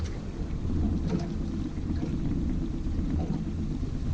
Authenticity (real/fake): real